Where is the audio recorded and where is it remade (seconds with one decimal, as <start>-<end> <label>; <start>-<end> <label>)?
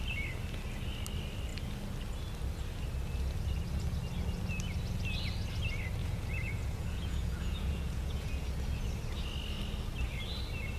0.0-6.0 recorded; 6.0-8.5 remade; 8.5-10.8 recorded